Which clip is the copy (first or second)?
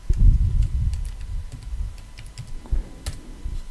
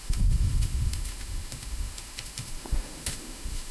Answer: second